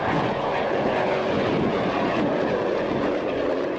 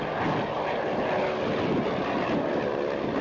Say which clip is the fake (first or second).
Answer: first